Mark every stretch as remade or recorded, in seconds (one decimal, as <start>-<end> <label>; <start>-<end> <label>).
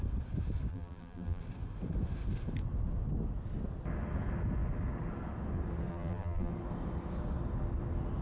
0.0-0.7 recorded; 0.7-1.4 remade; 1.4-5.9 recorded; 5.9-6.5 remade; 6.5-8.2 recorded